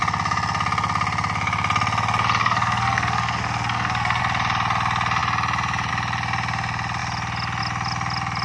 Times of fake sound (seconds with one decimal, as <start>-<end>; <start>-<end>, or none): 2.4-4.2